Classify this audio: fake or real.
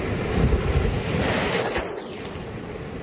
real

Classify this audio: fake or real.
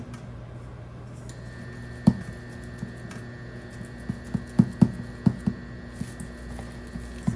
real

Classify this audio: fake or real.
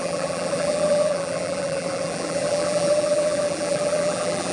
fake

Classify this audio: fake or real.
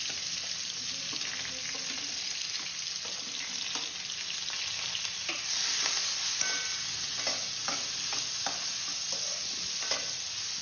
real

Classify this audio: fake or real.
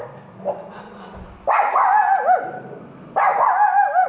real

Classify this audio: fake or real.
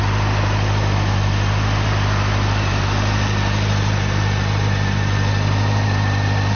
real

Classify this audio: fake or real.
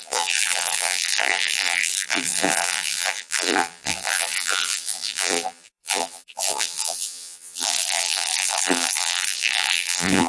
fake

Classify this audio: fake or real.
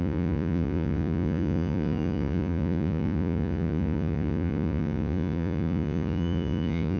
fake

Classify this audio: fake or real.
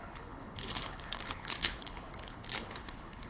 fake